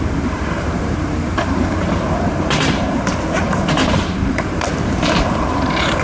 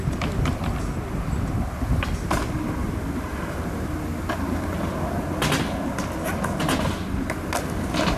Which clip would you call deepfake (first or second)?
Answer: first